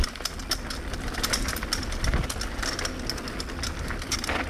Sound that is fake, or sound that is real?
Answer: real